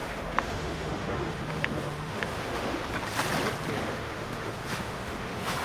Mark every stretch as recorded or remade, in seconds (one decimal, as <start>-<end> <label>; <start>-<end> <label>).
0.0-2.8 remade; 2.8-3.8 recorded; 3.8-5.6 remade